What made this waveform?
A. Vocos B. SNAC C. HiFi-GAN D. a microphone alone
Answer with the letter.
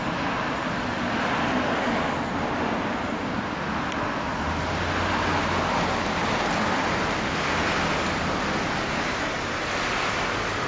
D